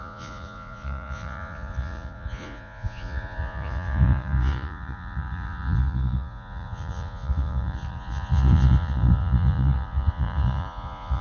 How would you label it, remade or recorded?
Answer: remade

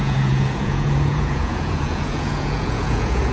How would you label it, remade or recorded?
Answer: remade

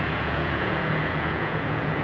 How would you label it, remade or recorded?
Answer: remade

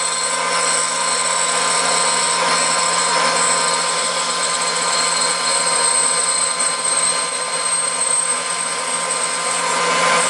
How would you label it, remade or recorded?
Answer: recorded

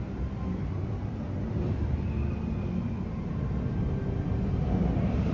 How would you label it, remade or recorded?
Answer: recorded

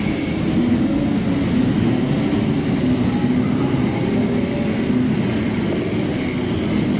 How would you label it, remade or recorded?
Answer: recorded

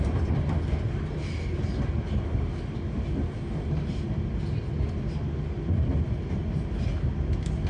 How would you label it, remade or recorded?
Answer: recorded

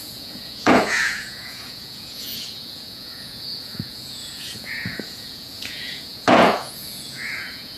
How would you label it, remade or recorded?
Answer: remade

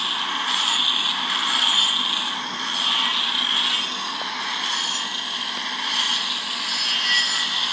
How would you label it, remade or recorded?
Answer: recorded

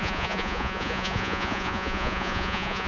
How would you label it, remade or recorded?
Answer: remade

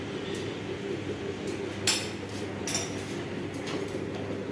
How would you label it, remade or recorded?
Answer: recorded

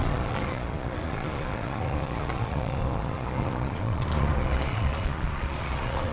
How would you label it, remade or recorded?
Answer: remade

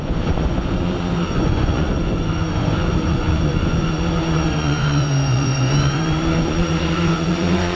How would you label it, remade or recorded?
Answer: remade